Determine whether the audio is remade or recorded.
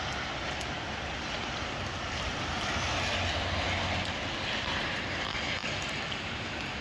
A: recorded